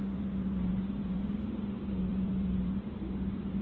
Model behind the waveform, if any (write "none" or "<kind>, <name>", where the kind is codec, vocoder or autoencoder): vocoder, BigVGAN v2